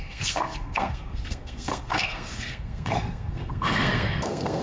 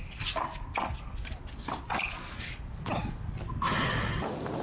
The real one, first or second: second